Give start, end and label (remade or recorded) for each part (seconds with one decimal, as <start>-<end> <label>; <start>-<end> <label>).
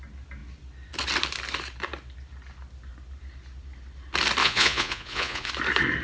0.0-4.4 recorded; 4.4-5.5 remade; 5.5-6.0 recorded